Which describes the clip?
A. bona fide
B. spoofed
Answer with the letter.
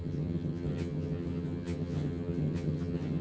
B